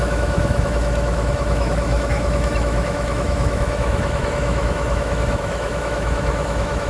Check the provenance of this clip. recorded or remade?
remade